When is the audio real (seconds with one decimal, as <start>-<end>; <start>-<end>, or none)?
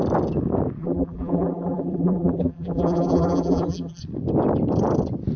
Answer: 0.0-0.8; 4.0-5.4